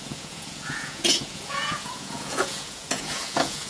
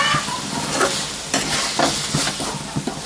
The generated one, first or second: first